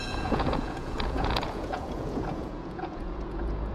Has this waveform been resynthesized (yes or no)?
yes